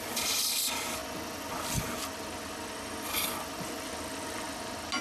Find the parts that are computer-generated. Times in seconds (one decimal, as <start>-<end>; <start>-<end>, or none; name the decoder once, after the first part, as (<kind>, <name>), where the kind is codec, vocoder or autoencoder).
none